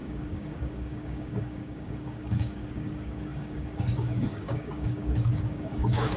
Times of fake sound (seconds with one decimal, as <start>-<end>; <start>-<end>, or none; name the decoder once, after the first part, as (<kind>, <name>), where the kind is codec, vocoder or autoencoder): 0.0-6.2 (codec, DAC)